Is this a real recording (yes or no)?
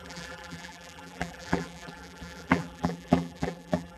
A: no